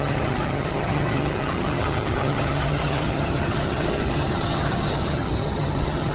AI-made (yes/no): yes